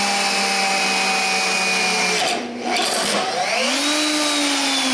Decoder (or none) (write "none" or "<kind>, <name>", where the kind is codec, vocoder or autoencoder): none